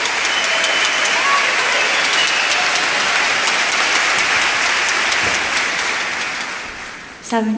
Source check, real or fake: real